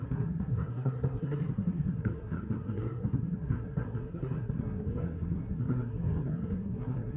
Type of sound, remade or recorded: remade